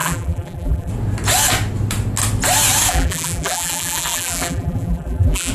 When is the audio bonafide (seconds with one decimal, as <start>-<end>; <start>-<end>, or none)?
0.9-2.9